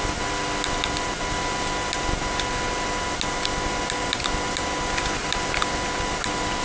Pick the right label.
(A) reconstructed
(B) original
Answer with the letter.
B